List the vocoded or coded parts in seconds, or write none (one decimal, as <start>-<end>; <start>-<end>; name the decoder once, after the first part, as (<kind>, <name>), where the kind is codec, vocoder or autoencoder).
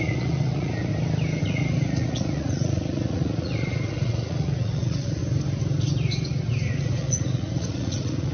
0.0-0.9 (vocoder, Vocos); 1.4-5.2; 6.8-8.3